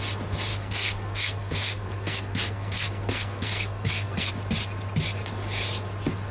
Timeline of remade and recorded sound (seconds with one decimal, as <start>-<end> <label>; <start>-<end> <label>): 0.0-0.5 recorded; 0.5-4.3 remade; 4.3-6.3 recorded